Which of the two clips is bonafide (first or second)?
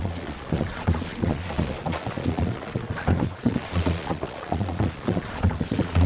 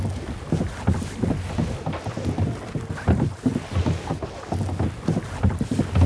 second